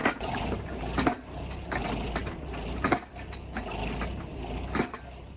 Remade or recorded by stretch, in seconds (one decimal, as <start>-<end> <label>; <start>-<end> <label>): 0.0-0.7 remade; 0.7-5.4 recorded